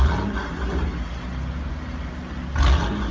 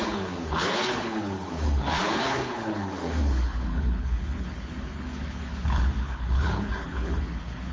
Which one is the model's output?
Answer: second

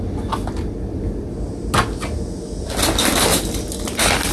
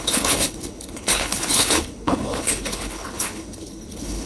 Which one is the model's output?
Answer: second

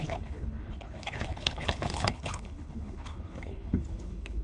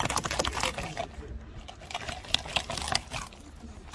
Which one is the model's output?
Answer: first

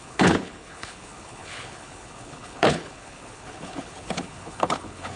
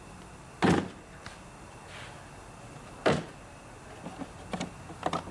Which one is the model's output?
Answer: first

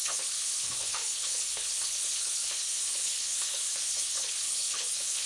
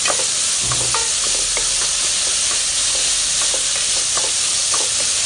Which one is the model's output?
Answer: first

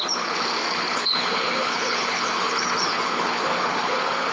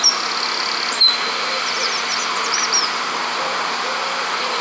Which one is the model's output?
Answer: first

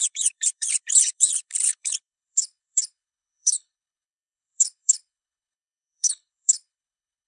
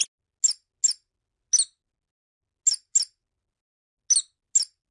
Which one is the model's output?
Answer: first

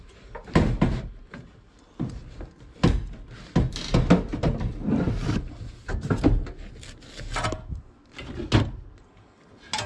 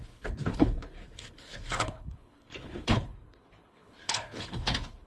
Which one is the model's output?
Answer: second